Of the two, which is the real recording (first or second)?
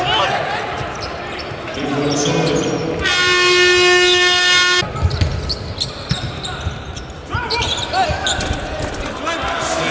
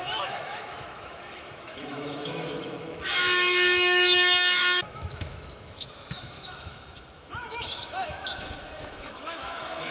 first